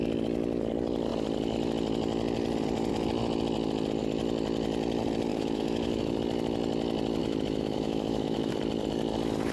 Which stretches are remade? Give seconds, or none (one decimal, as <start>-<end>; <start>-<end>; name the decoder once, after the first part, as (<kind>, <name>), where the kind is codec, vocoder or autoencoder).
5.3-6.1 (autoencoder, DAC-VAE); 7.2-8.5